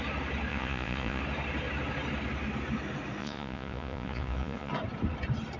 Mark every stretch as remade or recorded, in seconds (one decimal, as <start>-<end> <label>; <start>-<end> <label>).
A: 0.0-0.5 recorded; 0.5-1.2 remade; 1.2-3.2 recorded; 3.2-4.7 remade; 4.7-5.6 recorded